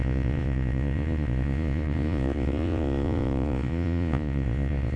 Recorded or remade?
remade